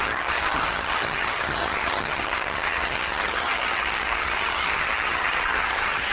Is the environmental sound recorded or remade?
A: remade